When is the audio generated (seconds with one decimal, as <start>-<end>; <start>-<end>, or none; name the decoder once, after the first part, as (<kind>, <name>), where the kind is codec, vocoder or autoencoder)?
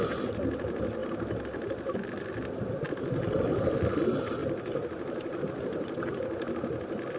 1.0-2.8 (vocoder, BigVGAN v2); 4.4-5.4